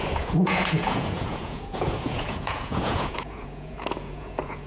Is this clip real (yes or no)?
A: no